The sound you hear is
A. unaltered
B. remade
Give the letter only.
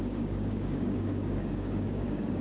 B